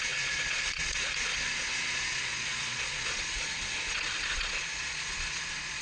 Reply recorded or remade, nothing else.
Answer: remade